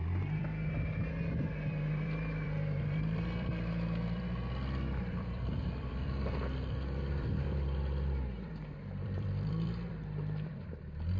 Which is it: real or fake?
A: fake